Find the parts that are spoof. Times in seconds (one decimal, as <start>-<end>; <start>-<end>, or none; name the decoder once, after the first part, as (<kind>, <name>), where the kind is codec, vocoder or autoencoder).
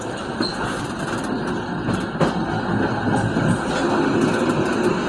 none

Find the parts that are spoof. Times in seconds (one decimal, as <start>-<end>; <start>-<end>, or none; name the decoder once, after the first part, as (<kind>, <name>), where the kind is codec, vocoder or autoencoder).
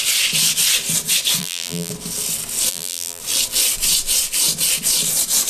1.4-1.9 (vocoder, BigVGAN v2); 2.7-3.2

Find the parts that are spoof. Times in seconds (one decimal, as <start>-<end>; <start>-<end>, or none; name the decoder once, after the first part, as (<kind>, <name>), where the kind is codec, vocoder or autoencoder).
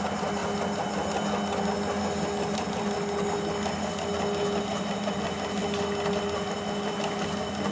none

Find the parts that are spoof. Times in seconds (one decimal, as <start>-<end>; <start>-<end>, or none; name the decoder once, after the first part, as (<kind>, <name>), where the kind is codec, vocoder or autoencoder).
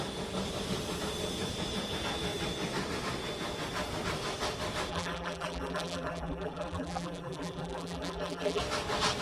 4.9-8.6 (vocoder, BigVGAN v2)